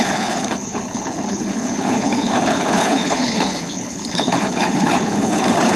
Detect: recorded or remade remade